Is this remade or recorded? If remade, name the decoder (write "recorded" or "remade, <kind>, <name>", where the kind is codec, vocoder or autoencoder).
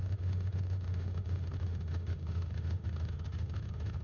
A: remade, autoencoder, DAC-VAE